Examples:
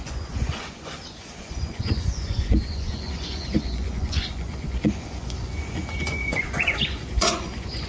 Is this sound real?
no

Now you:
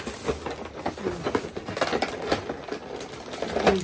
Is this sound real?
yes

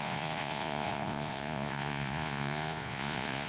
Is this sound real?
no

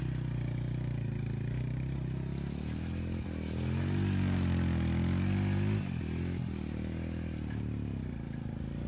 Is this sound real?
yes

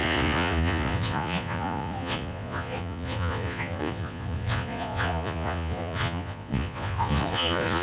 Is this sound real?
no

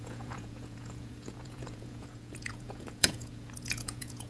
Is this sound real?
no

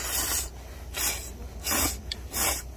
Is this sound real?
yes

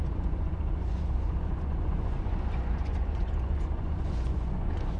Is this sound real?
no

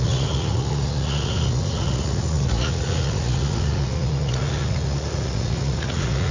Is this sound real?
no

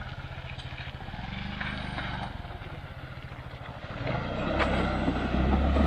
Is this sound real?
yes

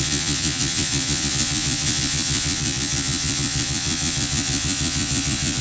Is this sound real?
no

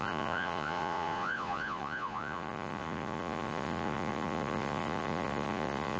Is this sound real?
no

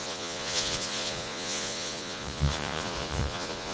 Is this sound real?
no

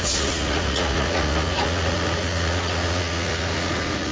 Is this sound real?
no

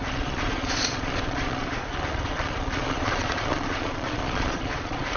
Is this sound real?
no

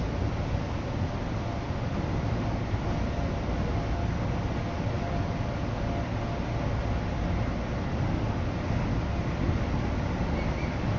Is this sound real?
yes